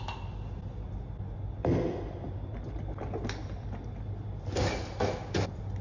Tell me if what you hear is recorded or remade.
recorded